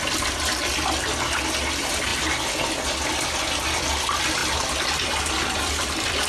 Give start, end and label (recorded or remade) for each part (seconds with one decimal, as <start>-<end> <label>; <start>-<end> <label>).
0.0-6.3 recorded